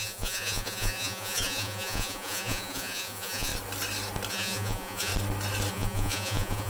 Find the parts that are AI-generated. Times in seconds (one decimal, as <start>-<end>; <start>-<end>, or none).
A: 0.0-3.5; 4.3-5.1; 5.7-6.7